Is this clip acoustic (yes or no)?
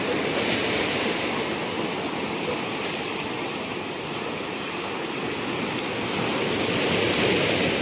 yes